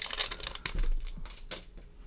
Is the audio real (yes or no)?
yes